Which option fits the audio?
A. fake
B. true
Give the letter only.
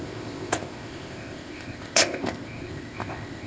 A